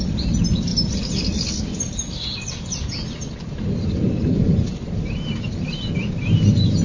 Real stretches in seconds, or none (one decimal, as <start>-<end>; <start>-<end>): 0.0-6.8